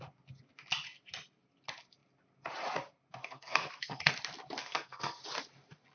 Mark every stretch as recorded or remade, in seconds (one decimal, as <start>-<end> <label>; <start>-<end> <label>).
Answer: 0.0-3.2 recorded; 3.2-4.1 remade; 4.1-4.6 recorded; 4.6-5.2 remade; 5.2-5.9 recorded